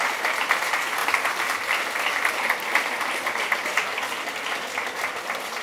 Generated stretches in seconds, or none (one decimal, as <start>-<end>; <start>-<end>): none